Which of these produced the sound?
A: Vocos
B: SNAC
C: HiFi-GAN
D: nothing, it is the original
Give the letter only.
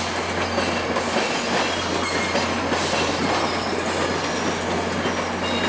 D